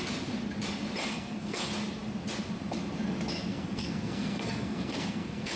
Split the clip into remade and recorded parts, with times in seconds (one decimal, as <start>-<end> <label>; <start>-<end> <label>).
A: 0.0-1.1 recorded; 1.1-1.6 remade; 1.6-3.5 recorded; 3.5-5.6 remade